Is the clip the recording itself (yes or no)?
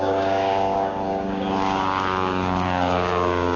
no